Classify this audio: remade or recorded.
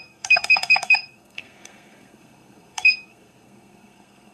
remade